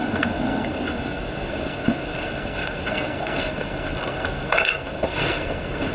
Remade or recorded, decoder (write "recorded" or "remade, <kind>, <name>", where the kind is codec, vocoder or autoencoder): remade, codec, SNAC